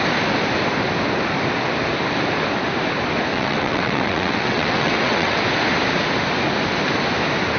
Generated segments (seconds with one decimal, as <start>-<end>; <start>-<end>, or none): 3.3-5.4